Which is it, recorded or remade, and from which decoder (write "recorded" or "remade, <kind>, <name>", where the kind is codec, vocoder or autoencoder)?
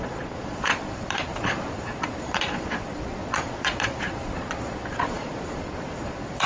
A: remade, vocoder, Vocos